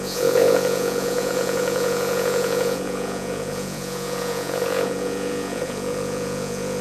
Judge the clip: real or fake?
fake